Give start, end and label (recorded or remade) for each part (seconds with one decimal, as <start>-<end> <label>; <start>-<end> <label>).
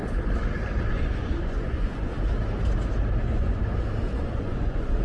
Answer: 0.0-0.9 recorded; 0.9-2.1 remade; 2.1-3.2 recorded; 3.2-3.6 remade; 3.6-4.2 recorded; 4.2-5.0 remade